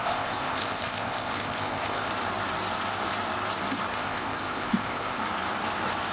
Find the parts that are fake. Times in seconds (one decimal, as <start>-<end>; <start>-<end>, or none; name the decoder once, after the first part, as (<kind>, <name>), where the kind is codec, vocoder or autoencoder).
0.0-2.1 (codec, ZipCodec); 3.9-5.2